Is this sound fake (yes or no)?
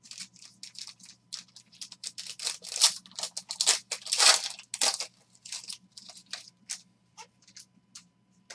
no